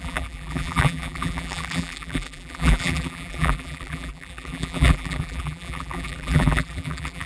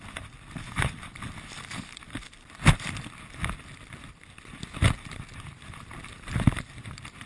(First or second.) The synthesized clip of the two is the first